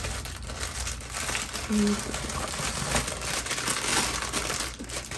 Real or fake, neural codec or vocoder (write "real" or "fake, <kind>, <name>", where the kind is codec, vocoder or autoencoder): real